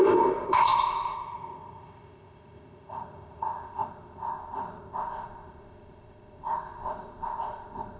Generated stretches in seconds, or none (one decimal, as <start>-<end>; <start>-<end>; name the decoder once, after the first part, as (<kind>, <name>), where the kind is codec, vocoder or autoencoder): 0.0-8.0 (codec, ZipCodec)